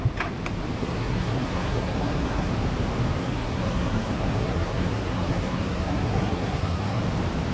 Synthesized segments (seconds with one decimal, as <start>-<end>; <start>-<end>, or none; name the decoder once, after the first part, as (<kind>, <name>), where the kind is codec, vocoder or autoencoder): 0.8-2.5 (codec, SNAC); 3.2-7.0